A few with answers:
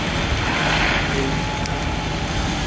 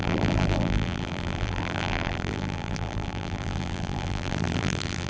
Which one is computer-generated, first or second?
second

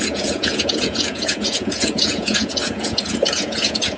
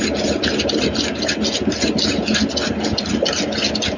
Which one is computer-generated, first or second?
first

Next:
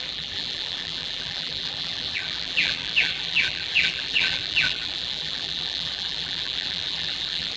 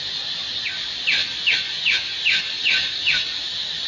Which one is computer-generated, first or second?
first